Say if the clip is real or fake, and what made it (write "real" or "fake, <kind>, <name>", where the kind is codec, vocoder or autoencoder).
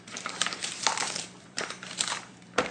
fake, vocoder, BigVGAN v2